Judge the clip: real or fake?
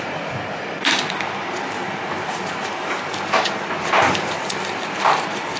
fake